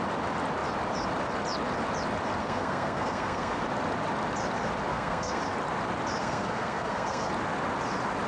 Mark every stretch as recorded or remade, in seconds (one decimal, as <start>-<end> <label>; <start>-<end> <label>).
0.0-2.4 recorded; 2.4-3.6 remade; 3.6-4.9 recorded; 4.9-5.4 remade; 5.4-6.2 recorded; 6.2-7.3 remade; 7.3-8.3 recorded